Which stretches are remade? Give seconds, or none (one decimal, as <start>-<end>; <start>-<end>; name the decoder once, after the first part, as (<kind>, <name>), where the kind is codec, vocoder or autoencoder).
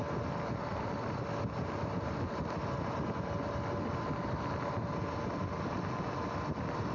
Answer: none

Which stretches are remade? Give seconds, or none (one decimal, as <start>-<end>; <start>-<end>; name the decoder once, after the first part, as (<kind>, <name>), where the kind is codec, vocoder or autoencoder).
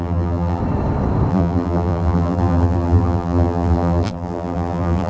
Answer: 0.0-0.6 (vocoder, BigVGAN v2); 1.3-5.1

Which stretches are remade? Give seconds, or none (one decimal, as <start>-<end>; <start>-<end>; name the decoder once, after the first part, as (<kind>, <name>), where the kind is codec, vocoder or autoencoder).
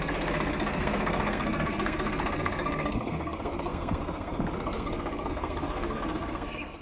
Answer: 0.0-6.8 (codec, SNAC)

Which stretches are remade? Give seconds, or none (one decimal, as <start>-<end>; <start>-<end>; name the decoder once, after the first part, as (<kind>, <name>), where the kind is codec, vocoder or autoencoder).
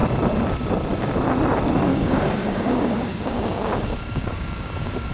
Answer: 1.9-5.1 (codec, DAC)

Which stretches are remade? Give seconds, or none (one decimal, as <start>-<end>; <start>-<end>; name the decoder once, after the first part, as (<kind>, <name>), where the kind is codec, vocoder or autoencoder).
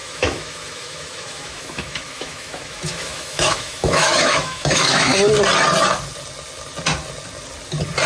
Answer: 0.0-5.1 (autoencoder, DAC-VAE)